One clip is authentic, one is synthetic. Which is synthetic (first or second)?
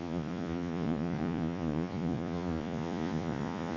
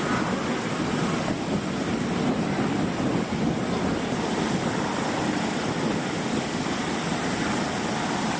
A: first